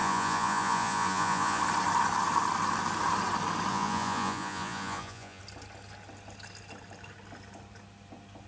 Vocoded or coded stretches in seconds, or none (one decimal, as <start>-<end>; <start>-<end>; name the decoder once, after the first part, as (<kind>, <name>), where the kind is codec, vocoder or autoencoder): 0.0-1.6 (vocoder, Vocos); 3.7-5.4